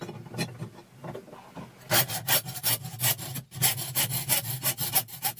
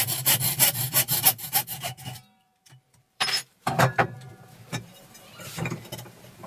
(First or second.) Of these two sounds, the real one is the first